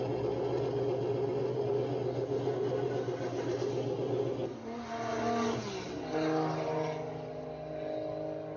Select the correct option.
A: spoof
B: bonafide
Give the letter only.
B